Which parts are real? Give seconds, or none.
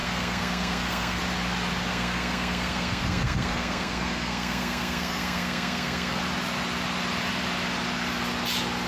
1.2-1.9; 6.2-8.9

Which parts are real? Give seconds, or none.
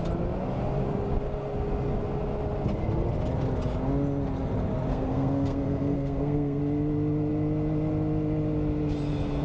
0.0-4.9; 6.6-9.4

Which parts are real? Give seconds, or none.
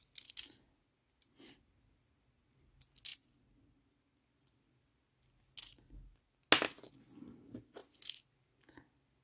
0.0-9.2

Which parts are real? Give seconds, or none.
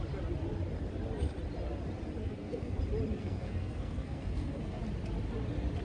0.0-2.2; 2.8-3.2; 4.8-5.8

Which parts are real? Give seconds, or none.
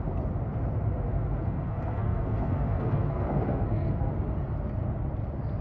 0.0-1.4; 4.1-5.6